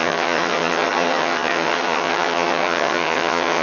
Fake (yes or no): yes